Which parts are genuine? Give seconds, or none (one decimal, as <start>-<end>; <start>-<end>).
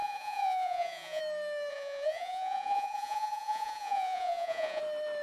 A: 1.2-1.7; 4.8-5.2